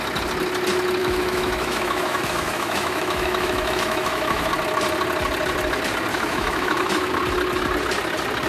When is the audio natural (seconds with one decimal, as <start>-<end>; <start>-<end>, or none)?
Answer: 0.0-1.0; 4.5-6.1; 7.1-8.5